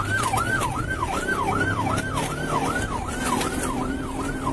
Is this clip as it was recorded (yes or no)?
no